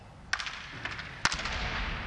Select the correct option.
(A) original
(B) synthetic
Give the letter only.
A